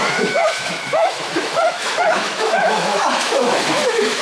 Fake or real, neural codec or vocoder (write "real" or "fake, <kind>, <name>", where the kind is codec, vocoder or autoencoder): fake, autoencoder, DAC-VAE